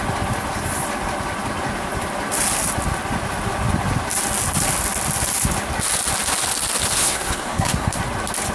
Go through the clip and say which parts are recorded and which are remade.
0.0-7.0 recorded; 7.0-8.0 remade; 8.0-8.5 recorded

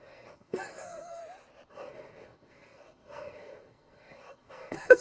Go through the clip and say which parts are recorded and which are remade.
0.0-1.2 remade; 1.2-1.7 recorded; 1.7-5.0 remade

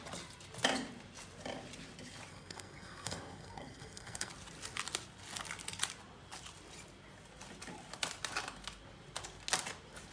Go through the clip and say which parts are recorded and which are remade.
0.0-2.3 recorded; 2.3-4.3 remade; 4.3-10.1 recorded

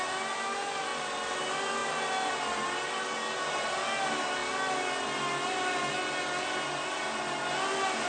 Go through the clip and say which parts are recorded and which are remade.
0.0-8.1 recorded

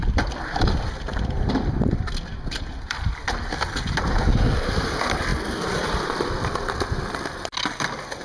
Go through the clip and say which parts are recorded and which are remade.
0.0-8.2 recorded

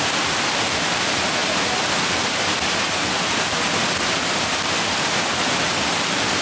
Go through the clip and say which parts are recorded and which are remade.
0.0-6.4 recorded

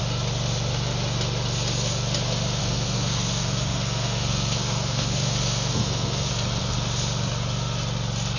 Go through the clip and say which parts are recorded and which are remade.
0.0-2.6 recorded; 2.6-6.3 remade; 6.3-8.4 recorded

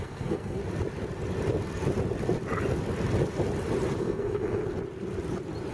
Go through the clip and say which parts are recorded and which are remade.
0.0-0.6 remade; 0.6-4.0 recorded; 4.0-4.6 remade; 4.6-5.7 recorded